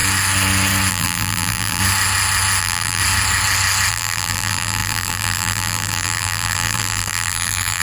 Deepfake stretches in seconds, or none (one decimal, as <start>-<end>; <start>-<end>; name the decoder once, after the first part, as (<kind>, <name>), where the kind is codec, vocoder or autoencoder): 0.9-1.8 (vocoder, BigVGAN v2); 2.6-3.0; 3.9-7.8